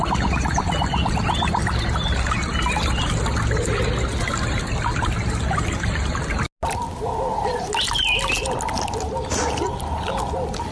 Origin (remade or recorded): recorded